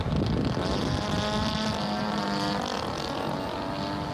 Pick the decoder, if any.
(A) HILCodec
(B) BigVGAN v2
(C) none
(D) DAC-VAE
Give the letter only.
C